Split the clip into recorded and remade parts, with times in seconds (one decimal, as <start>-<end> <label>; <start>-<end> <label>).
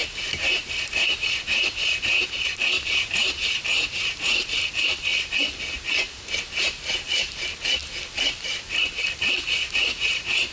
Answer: 0.0-5.1 remade; 5.1-6.4 recorded; 6.4-7.8 remade; 7.8-8.9 recorded; 8.9-10.5 remade